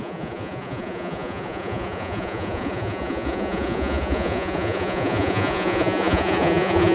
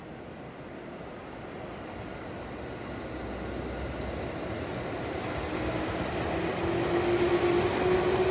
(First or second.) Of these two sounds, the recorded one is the second